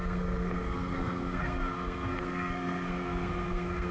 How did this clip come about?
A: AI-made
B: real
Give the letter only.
A